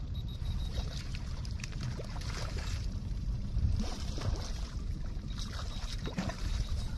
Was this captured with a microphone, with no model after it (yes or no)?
no